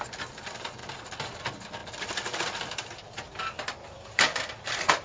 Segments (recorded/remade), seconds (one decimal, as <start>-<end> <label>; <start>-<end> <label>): 0.0-1.8 recorded; 1.8-2.9 remade; 2.9-3.3 recorded; 3.3-5.0 remade